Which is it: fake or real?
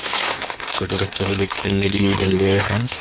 fake